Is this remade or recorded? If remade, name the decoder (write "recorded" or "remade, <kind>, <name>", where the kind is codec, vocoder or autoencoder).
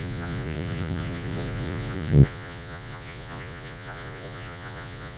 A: remade, vocoder, Vocos